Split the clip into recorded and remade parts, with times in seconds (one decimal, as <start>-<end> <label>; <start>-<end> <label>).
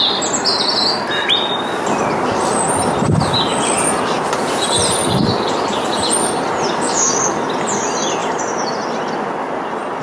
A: 0.0-10.0 recorded